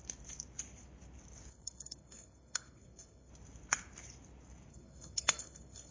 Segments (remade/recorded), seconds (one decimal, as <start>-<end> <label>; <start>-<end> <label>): 0.0-1.5 recorded; 1.5-3.3 remade; 3.3-4.7 recorded; 4.7-5.9 remade